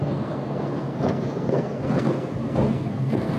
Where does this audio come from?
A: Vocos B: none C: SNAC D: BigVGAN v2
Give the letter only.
C